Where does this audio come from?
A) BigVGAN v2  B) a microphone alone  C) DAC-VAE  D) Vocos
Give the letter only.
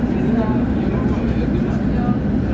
B